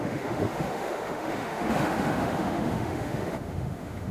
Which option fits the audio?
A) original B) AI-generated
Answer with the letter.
B